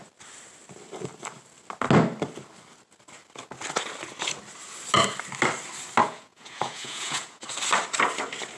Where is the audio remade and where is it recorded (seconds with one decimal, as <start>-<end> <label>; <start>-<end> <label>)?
0.0-6.0 recorded; 6.0-7.4 remade; 7.4-8.6 recorded